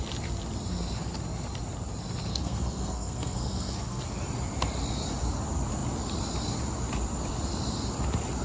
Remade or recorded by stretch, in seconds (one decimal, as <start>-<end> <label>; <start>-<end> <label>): 0.0-2.3 recorded; 2.3-4.0 remade; 4.0-8.4 recorded